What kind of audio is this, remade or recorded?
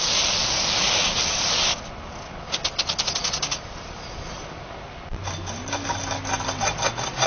recorded